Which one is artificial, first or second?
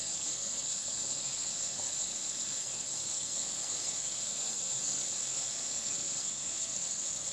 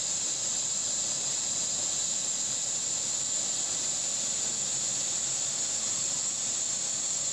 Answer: first